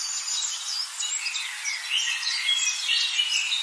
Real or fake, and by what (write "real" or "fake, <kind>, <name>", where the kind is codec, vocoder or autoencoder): real